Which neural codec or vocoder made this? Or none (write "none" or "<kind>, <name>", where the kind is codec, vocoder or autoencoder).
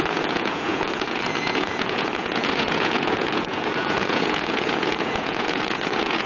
vocoder, Vocos